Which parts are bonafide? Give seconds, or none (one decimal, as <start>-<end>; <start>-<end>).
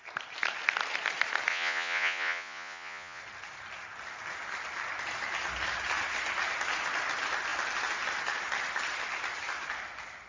0.0-1.5; 3.2-10.3